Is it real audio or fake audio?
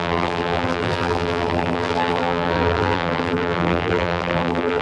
fake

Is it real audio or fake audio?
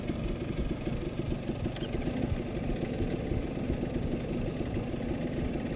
real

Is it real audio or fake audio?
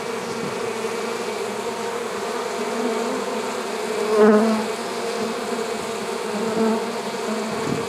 real